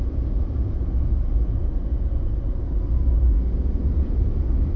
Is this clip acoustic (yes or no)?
no